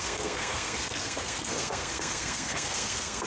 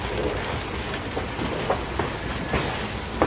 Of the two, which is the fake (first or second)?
first